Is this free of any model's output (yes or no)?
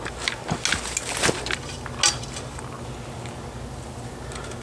yes